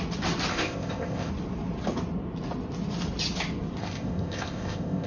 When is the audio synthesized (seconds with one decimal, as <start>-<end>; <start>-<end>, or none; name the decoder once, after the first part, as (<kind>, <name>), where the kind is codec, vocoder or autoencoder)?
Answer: 0.5-1.3 (codec, ZipCodec); 3.8-5.1

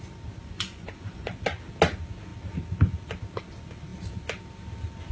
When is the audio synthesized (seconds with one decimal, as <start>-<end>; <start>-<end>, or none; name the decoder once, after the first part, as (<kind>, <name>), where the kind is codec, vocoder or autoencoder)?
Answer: 0.4-1.3 (vocoder, Vocos)

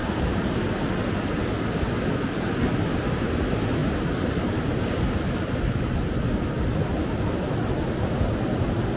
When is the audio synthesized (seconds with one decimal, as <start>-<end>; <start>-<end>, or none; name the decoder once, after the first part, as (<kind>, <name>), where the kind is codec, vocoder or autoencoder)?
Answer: 0.0-0.9 (vocoder, BigVGAN v2)

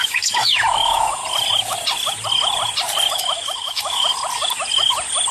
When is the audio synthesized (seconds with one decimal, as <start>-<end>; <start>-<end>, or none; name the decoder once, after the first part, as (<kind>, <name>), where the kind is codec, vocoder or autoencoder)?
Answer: 0.0-1.2 (autoencoder, DAC-VAE); 3.1-4.1

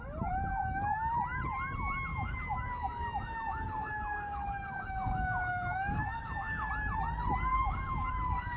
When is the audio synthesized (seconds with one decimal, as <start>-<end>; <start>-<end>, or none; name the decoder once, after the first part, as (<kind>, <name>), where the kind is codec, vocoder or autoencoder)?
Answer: 0.5-1.1 (codec, DAC); 2.1-6.7; 7.5-8.6

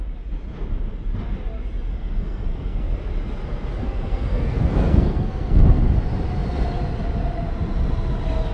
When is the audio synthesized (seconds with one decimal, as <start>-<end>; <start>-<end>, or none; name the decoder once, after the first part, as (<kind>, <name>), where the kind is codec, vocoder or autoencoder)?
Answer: 1.9-2.9 (codec, SNAC); 3.8-5.8

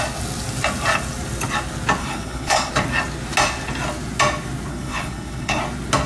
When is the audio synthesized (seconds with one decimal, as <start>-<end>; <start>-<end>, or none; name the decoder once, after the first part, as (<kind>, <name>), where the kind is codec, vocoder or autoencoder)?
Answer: 2.0-2.7 (codec, HILCodec); 4.7-5.6

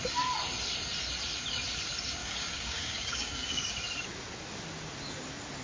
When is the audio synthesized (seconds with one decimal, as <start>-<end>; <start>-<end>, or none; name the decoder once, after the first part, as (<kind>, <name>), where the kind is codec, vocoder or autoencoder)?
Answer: 2.2-3.7 (codec, DAC)